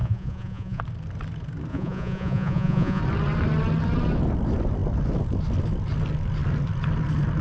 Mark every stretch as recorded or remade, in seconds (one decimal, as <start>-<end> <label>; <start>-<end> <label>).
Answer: 0.0-0.8 remade; 0.8-1.7 recorded; 1.7-3.0 remade; 3.0-7.4 recorded